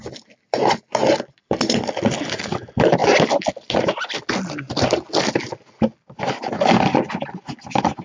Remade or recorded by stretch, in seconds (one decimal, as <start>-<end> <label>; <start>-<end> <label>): 0.0-8.0 recorded